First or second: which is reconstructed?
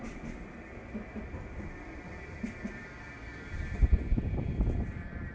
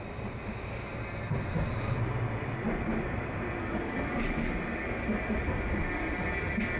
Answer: first